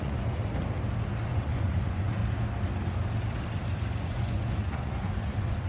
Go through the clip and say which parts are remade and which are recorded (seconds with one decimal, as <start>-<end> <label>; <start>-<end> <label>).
0.0-0.4 remade; 0.4-1.3 recorded; 1.3-2.2 remade; 2.2-4.0 recorded; 4.0-5.7 remade